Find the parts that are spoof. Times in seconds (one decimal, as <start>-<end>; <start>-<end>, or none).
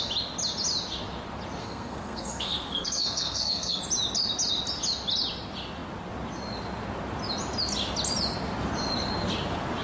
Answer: 1.6-3.8